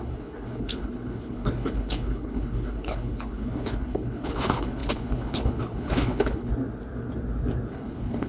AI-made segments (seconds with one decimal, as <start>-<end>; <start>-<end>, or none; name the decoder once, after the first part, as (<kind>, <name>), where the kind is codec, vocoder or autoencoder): 0.0-6.5 (codec, HILCodec); 7.7-8.3